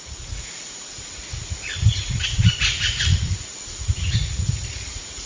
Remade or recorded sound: remade